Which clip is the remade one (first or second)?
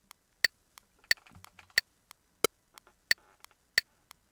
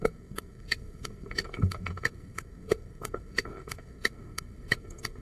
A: second